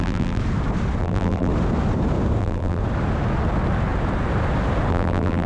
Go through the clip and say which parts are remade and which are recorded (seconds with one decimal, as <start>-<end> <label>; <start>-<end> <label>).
0.0-0.4 remade; 0.4-1.0 recorded; 1.0-1.5 remade; 1.5-2.4 recorded; 2.4-2.8 remade; 2.8-4.9 recorded; 4.9-5.5 remade